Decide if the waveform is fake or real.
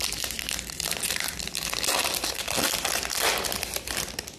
real